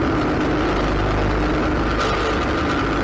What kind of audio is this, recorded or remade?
recorded